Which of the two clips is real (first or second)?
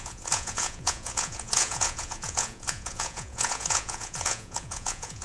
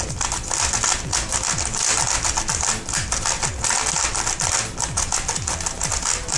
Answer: second